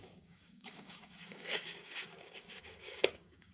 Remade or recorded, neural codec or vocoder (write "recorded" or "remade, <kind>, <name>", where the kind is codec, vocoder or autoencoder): remade, codec, DAC